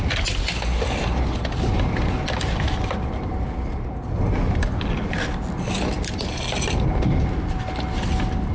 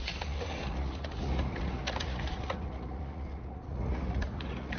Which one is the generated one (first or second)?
second